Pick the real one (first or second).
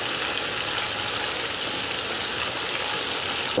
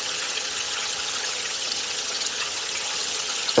first